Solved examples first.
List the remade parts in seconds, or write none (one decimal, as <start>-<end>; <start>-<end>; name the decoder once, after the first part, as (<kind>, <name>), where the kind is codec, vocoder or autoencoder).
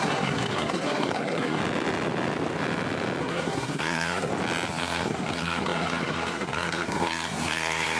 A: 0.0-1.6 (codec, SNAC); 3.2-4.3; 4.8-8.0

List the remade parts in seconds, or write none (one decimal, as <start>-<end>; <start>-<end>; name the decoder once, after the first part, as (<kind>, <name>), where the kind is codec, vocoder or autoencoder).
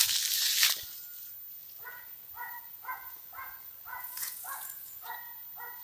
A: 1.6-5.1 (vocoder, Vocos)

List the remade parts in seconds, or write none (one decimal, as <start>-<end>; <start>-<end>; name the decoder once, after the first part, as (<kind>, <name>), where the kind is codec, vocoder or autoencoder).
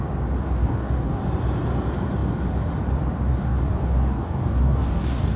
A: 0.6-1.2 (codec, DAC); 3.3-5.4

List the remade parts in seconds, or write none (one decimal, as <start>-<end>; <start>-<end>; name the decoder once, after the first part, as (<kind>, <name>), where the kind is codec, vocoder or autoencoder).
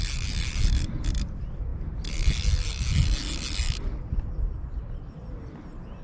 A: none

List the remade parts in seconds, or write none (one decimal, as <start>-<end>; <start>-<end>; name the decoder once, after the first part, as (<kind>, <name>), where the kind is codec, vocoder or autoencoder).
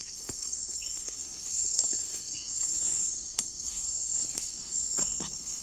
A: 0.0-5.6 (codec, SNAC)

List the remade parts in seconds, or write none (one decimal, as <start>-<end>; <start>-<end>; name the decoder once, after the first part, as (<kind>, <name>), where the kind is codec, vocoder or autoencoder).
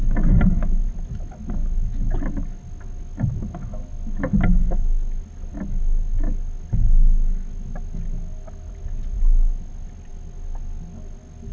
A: none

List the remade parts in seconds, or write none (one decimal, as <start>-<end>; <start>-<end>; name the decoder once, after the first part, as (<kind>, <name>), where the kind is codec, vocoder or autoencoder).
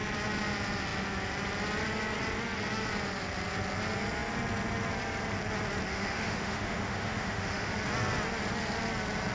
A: 5.9-7.7 (autoencoder, DAC-VAE)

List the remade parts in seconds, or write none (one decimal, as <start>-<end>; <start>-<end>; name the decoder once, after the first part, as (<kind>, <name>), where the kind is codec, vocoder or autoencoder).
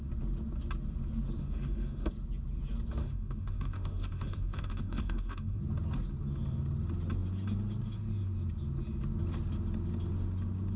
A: 1.4-2.1 (autoencoder, DAC-VAE); 3.0-5.6